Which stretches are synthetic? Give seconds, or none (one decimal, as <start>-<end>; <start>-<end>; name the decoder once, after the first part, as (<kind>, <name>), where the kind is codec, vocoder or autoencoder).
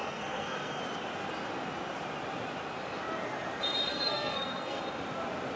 0.0-0.8 (codec, SNAC); 3.9-4.8